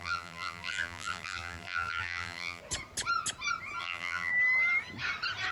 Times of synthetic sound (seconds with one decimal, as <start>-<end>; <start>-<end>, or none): 0.0-2.6; 3.8-4.3